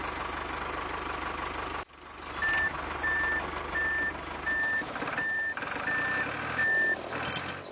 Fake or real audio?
real